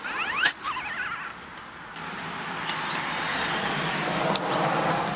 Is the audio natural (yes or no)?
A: yes